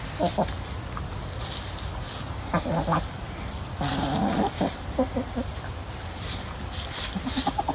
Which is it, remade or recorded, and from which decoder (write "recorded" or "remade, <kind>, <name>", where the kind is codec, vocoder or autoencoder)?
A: recorded